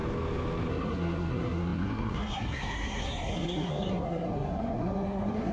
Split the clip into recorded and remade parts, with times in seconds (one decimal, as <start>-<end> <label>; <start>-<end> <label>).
0.0-0.7 recorded; 0.7-5.5 remade